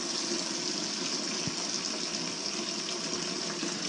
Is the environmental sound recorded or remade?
recorded